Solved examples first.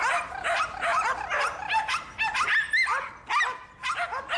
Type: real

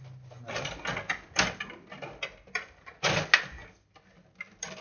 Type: real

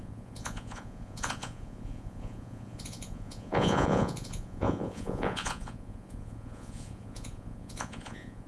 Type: fake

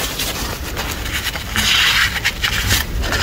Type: real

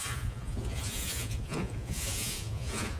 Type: fake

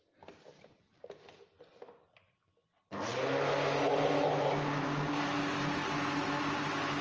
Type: real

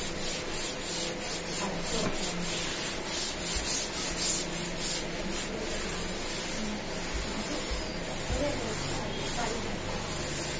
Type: real